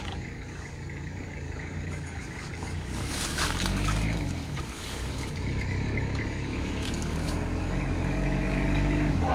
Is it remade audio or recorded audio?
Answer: remade